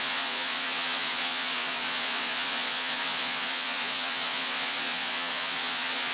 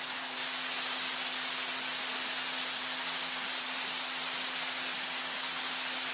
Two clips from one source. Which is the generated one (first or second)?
first